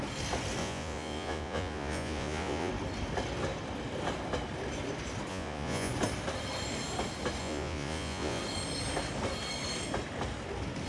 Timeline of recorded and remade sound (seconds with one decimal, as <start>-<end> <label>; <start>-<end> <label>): 0.0-0.6 recorded; 0.6-2.7 remade; 2.7-5.3 recorded; 5.3-5.9 remade; 5.9-7.4 recorded; 7.4-8.4 remade; 8.4-10.9 recorded